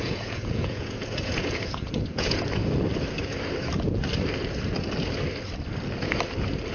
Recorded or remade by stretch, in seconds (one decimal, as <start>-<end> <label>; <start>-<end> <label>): 0.0-2.6 remade; 2.6-6.7 recorded

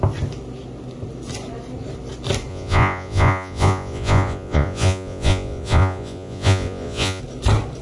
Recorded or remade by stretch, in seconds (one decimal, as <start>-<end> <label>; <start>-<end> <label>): 0.0-2.5 recorded; 2.5-7.2 remade; 7.2-7.8 recorded